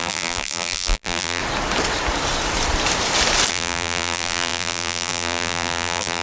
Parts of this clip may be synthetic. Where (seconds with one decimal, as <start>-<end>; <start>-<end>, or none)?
0.0-1.4; 3.5-6.2